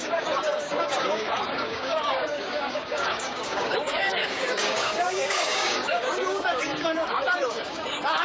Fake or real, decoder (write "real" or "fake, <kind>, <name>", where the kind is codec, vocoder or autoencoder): fake, codec, DAC